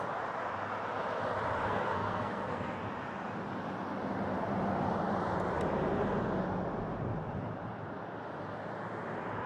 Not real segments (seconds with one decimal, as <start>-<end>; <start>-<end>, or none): 1.6-2.8